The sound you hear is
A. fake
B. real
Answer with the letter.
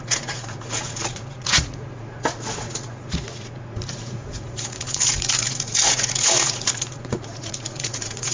A